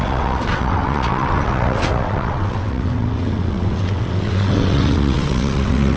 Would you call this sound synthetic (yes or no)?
yes